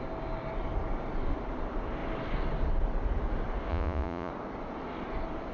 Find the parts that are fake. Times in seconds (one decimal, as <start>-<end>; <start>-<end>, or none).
3.7-4.3